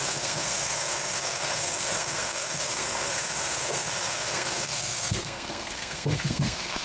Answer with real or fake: fake